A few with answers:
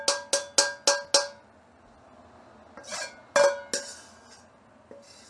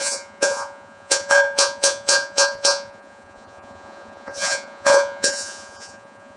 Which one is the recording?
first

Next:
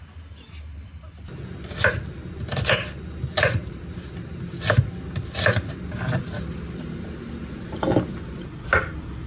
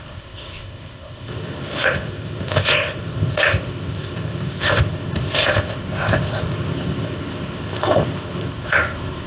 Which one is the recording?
first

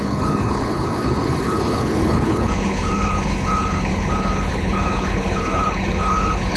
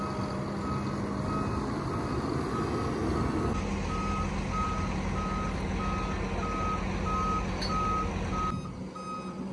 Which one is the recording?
second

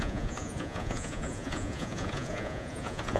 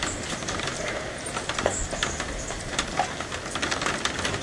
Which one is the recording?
second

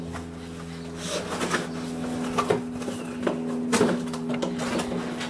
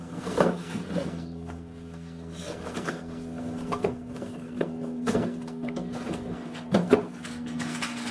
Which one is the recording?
first